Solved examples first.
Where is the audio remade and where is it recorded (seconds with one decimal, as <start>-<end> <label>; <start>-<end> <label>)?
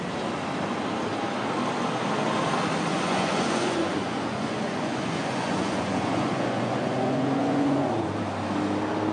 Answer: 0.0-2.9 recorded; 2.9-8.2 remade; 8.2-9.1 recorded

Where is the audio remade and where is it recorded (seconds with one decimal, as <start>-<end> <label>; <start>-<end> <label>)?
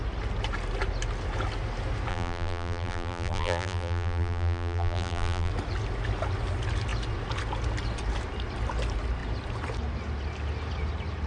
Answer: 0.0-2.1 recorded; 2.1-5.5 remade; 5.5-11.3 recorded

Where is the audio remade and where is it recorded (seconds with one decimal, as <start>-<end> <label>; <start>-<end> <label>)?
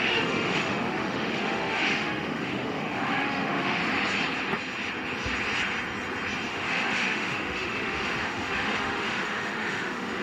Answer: 0.0-3.8 remade; 3.8-6.5 recorded; 6.5-10.2 remade